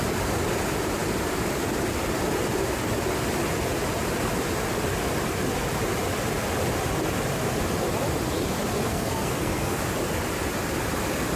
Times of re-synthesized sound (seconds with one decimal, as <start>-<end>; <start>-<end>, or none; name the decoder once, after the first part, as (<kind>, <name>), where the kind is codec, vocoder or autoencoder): 8.9-9.8 (codec, SNAC)